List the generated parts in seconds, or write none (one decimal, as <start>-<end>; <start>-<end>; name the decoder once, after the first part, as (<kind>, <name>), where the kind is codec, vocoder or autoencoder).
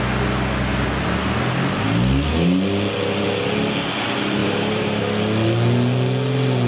4.4-5.0 (vocoder, BigVGAN v2)